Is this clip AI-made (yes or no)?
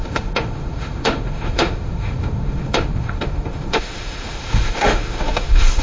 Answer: yes